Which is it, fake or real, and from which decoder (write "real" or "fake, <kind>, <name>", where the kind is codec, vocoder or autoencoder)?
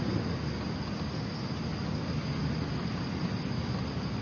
real